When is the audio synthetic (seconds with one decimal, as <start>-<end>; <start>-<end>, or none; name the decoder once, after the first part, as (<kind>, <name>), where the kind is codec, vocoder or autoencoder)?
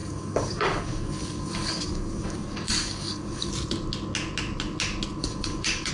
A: 0.0-3.5 (codec, DAC); 5.2-5.9